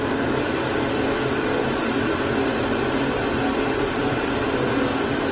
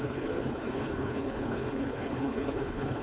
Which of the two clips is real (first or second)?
first